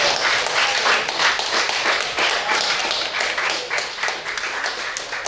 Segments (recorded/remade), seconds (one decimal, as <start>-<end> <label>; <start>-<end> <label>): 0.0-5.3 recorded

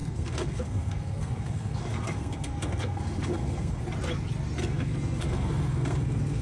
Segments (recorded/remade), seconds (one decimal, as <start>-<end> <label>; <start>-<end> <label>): 0.0-3.8 remade; 3.8-4.6 recorded; 4.6-6.4 remade

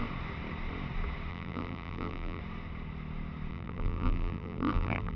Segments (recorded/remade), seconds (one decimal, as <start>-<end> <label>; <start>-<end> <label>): 0.0-1.3 recorded; 1.3-2.4 remade; 2.4-3.5 recorded; 3.5-5.2 remade

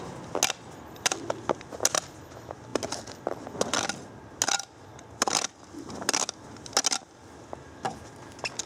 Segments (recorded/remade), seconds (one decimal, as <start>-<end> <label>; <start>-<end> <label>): 0.0-8.7 recorded

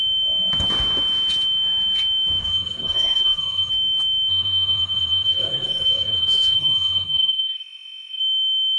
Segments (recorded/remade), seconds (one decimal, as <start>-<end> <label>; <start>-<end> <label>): 0.0-2.4 recorded; 2.4-3.7 remade; 3.7-4.3 recorded; 4.3-8.2 remade; 8.2-8.8 recorded

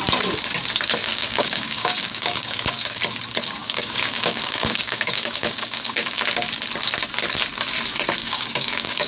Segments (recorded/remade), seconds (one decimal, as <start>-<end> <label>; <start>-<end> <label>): 0.0-1.0 recorded; 1.0-3.0 remade; 3.0-3.6 recorded; 3.6-6.2 remade; 6.2-8.2 recorded; 8.2-9.1 remade